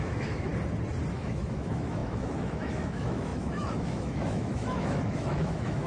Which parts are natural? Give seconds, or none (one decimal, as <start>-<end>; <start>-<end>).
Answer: 0.5-1.1